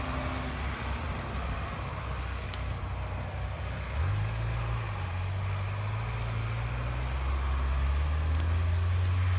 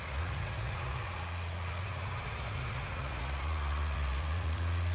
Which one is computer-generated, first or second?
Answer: second